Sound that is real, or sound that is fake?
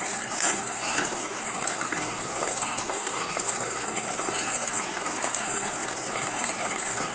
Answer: fake